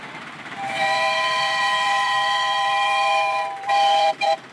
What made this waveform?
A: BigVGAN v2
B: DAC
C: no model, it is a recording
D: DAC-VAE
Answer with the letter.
A